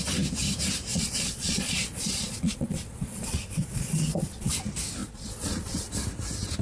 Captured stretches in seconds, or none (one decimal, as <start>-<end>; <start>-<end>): 0.0-0.9; 4.5-5.0; 5.9-6.6